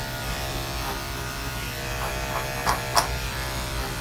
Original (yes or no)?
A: yes